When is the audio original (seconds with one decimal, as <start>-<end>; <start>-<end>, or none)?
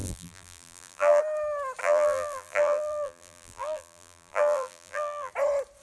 1.2-1.8; 5.3-5.8